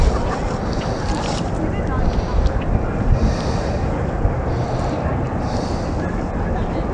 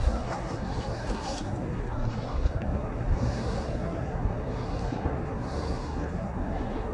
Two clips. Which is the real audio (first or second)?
first